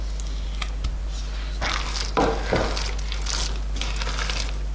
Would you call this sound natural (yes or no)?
yes